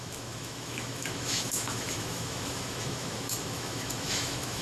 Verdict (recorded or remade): remade